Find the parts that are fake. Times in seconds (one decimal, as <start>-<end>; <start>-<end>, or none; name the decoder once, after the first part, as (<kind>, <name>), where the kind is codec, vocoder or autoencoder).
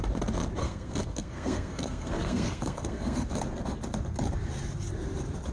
0.6-3.3 (codec, SNAC)